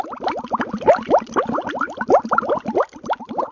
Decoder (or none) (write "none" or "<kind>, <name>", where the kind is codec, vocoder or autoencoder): none